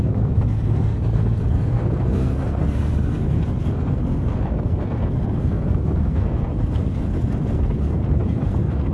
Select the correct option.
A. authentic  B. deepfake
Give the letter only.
B